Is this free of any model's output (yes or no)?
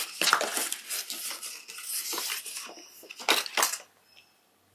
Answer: yes